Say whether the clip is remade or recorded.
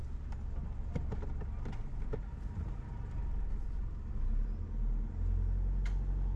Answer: recorded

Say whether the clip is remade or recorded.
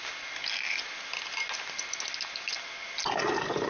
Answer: recorded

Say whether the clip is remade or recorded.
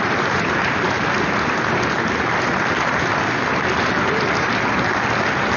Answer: recorded